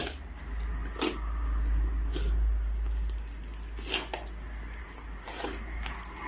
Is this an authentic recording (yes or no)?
yes